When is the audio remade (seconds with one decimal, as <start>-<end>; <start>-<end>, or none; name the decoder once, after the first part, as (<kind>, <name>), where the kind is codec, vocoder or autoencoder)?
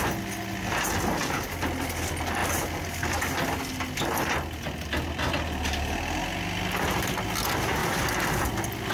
none